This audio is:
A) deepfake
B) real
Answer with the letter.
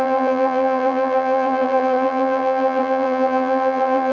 A